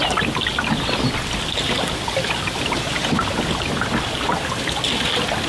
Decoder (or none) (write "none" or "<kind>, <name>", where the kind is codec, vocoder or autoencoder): none